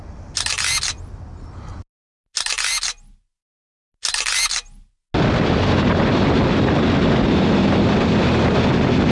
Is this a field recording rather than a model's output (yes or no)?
yes